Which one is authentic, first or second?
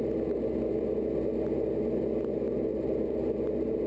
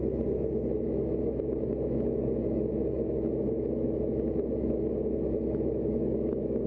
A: first